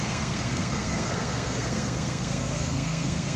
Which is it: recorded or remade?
remade